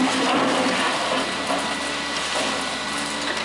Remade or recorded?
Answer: recorded